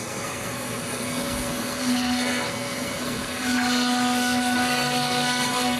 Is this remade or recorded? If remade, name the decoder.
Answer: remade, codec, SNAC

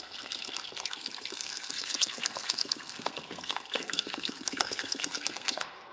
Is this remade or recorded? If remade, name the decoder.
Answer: remade, codec, SNAC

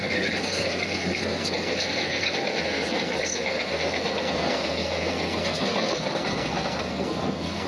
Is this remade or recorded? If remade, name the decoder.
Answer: remade, codec, SNAC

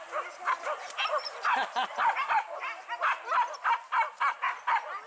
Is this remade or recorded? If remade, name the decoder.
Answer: recorded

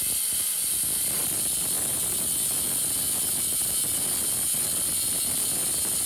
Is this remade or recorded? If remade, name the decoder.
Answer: recorded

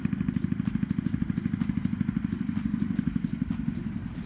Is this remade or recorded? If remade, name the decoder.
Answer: recorded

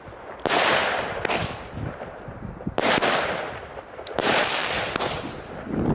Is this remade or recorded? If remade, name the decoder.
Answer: recorded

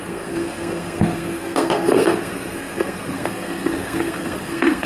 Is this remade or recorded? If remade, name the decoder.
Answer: remade, codec, SNAC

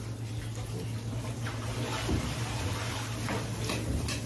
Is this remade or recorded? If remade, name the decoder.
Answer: recorded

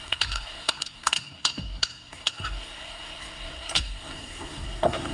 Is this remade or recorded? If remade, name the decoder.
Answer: remade, codec, SNAC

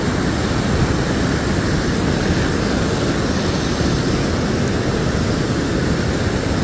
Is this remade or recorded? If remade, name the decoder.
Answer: recorded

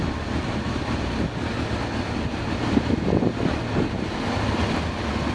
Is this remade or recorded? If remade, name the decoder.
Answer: recorded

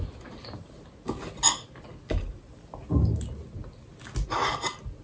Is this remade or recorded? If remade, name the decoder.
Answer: recorded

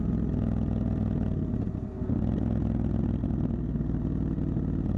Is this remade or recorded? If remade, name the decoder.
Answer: recorded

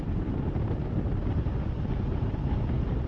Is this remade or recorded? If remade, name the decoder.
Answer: recorded